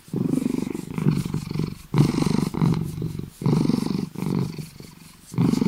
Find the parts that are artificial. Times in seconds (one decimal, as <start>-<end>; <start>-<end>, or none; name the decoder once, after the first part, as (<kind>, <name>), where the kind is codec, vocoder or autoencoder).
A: none